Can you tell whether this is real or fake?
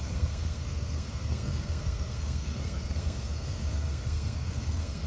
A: fake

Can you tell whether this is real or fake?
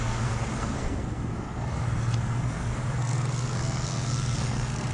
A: fake